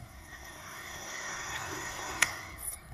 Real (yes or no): no